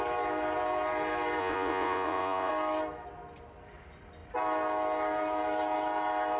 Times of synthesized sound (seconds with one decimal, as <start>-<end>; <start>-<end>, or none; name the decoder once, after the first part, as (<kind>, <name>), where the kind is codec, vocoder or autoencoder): 1.4-2.5 (vocoder, Vocos)